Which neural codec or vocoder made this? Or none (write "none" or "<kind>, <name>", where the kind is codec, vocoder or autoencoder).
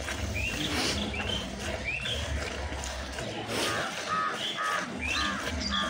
none